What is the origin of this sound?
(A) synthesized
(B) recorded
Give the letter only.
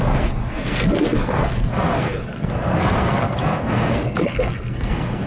A